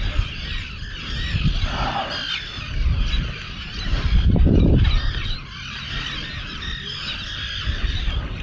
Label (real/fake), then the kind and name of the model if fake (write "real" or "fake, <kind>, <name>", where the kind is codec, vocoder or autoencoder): real